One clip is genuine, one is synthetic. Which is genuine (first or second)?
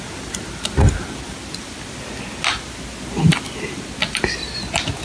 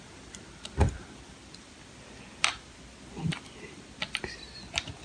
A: first